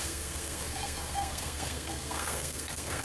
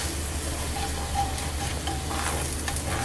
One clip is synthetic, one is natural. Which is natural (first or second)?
second